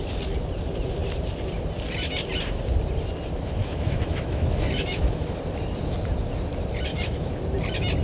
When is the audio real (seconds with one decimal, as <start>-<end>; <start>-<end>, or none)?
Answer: 0.0-3.6; 5.4-6.9; 7.4-8.0